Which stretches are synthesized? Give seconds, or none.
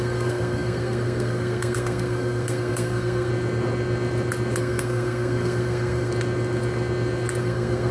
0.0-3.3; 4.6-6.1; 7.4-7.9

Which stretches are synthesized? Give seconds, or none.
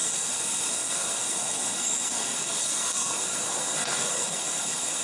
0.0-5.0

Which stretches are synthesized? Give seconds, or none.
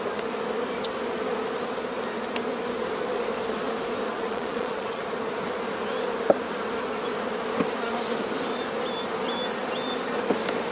4.1-5.0